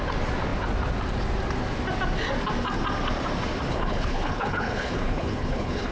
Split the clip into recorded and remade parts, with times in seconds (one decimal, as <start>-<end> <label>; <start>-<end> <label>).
0.0-3.7 recorded; 3.7-5.9 remade